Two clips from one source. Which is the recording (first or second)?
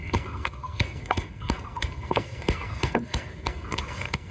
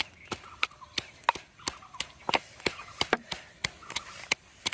second